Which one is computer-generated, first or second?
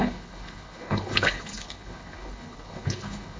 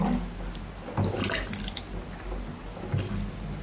first